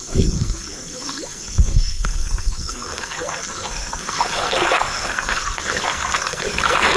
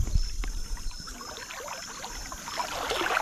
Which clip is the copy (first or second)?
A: first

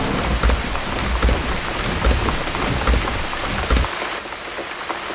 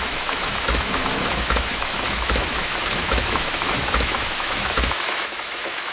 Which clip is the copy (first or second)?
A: second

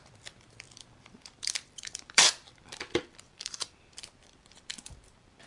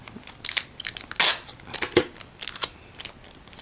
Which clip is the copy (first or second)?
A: first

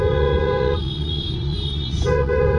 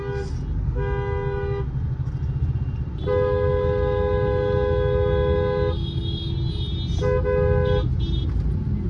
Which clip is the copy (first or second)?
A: first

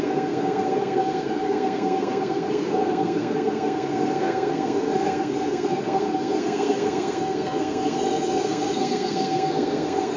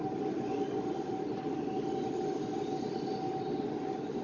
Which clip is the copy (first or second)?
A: first